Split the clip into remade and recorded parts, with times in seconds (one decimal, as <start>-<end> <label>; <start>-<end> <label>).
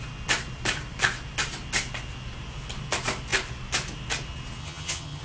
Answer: 0.0-4.6 recorded; 4.6-5.2 remade